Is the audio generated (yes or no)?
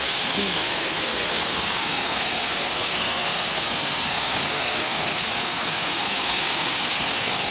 yes